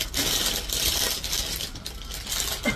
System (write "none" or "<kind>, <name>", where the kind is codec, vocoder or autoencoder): none